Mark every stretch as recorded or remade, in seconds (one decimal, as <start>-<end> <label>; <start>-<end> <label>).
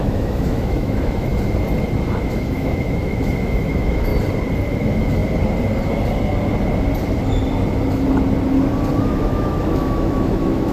0.0-1.3 remade; 1.3-2.2 recorded; 2.2-4.1 remade; 4.1-4.7 recorded; 4.7-5.2 remade; 5.2-9.0 recorded; 9.0-10.7 remade